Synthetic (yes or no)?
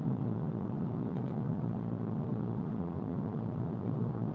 yes